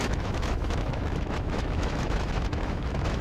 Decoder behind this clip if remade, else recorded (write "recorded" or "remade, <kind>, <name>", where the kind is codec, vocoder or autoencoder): remade, autoencoder, DAC-VAE